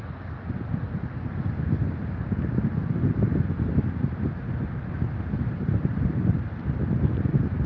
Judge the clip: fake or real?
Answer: real